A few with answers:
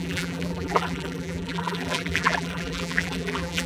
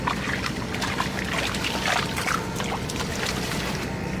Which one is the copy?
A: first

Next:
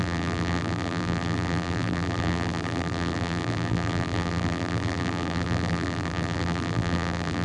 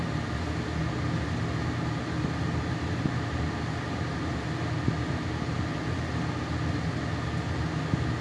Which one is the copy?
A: first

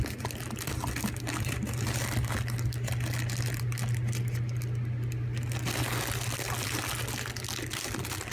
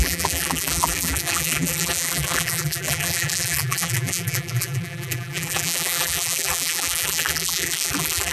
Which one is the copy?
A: second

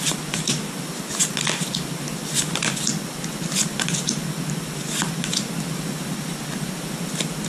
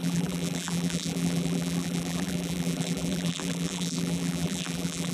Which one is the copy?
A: second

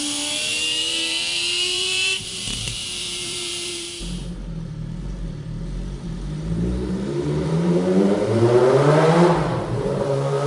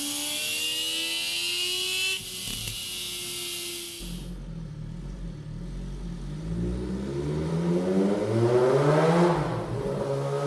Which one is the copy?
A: first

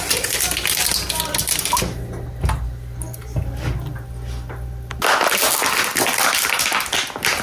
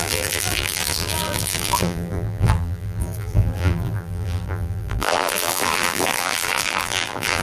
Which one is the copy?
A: second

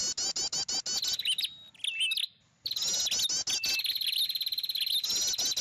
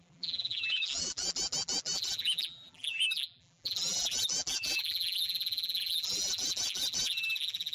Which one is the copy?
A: second